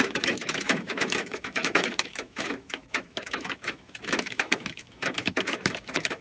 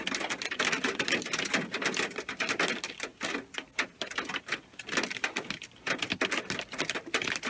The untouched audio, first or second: second